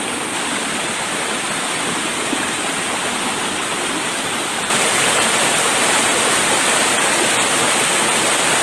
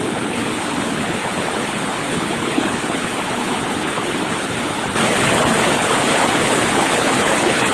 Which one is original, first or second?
first